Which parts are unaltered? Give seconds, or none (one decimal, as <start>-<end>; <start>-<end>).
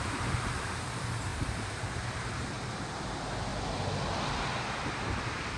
3.5-4.9